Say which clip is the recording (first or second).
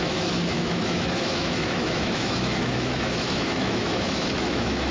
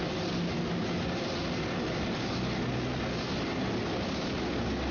second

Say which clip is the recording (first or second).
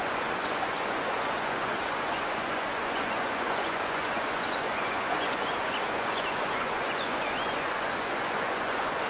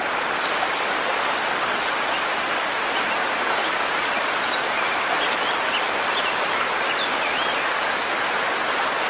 second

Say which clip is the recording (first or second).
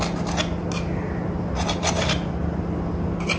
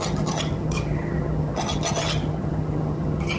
first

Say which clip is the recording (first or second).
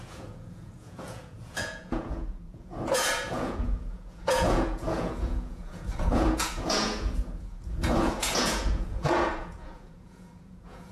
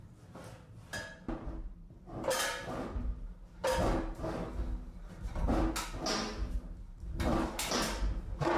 second